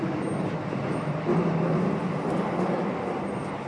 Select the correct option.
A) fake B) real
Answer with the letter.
B